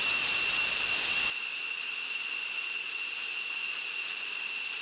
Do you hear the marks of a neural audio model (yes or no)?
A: no